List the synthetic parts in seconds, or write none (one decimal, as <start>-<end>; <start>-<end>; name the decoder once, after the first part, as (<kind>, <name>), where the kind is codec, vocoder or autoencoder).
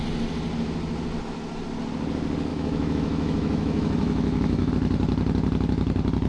2.5-4.7 (autoencoder, DAC-VAE)